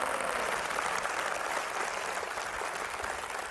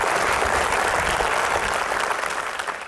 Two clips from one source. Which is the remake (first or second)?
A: second